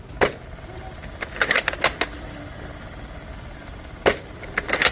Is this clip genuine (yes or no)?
yes